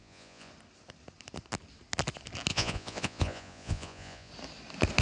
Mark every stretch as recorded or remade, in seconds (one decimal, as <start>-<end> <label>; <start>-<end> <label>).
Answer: 0.0-0.5 remade; 0.5-2.5 recorded; 2.5-4.3 remade; 4.3-5.0 recorded